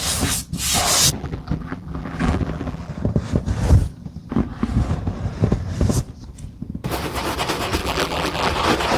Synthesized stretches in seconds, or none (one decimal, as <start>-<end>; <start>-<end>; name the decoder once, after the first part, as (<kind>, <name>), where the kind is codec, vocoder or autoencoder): 1.2-2.9 (vocoder, BigVGAN v2); 7.8-8.5